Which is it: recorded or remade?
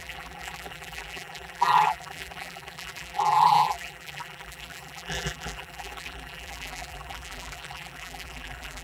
remade